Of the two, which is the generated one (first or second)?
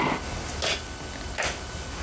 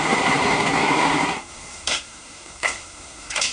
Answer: second